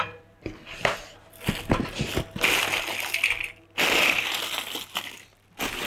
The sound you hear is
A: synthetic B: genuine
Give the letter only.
B